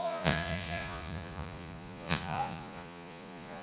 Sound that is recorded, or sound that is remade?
remade